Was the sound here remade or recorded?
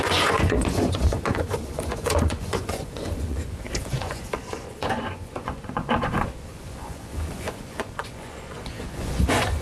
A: remade